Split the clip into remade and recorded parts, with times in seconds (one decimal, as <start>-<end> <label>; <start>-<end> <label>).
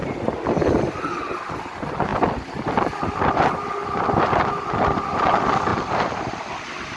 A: 0.0-7.0 recorded